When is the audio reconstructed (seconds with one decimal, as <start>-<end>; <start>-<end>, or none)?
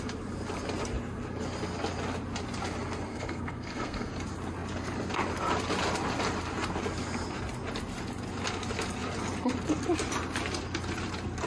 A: 3.1-4.1